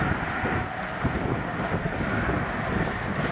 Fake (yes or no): no